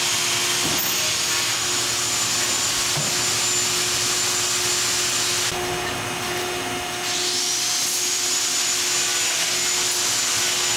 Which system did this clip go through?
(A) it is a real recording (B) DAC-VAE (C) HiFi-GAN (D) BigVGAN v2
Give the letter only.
A